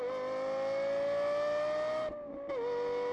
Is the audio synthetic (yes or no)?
no